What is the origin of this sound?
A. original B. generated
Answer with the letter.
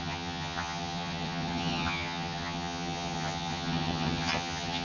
B